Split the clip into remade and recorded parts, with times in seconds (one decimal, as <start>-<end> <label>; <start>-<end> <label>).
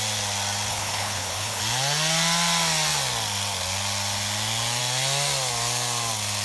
0.0-0.7 recorded; 0.7-1.6 remade; 1.6-6.4 recorded